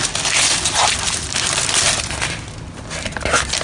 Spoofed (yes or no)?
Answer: no